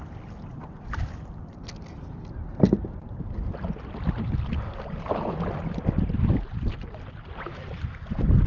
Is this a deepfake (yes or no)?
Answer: no